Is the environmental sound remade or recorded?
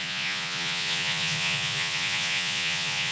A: remade